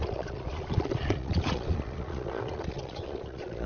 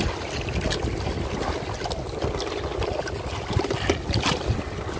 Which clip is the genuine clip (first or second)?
second